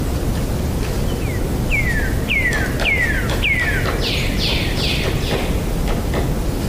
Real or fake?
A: real